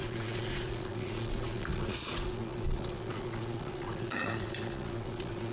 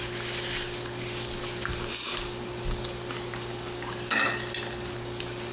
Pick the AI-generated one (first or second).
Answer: first